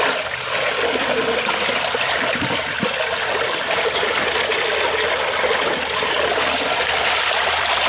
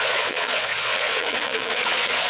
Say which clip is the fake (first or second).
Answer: second